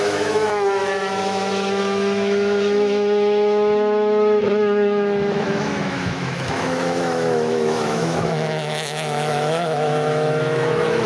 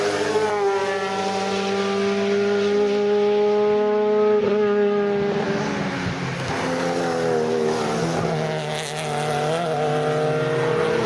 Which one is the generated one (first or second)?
first